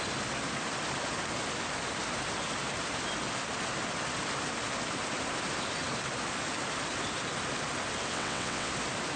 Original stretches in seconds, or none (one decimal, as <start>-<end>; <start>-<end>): 0.0-8.1; 8.7-9.2